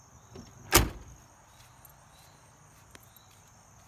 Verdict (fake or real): real